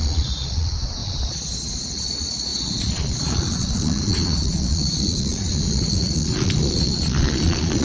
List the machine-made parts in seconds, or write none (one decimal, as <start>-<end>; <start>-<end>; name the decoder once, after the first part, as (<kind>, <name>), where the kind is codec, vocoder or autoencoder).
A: 0.0-7.8 (vocoder, Vocos)